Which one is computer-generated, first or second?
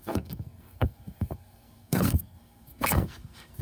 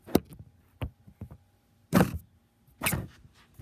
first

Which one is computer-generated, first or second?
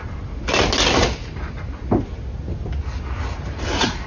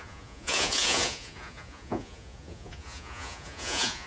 second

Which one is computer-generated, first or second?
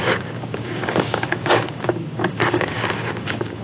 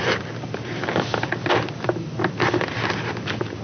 first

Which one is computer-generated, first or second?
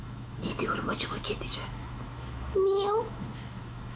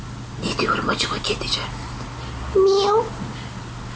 first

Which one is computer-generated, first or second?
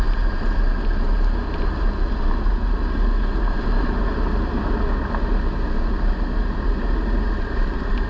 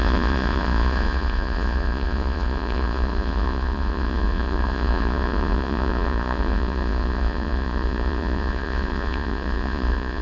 second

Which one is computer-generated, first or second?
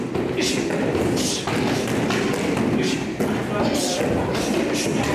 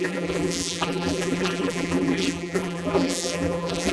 second